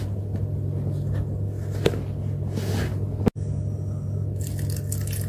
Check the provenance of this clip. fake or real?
real